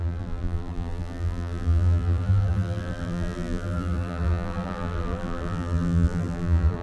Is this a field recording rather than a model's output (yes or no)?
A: no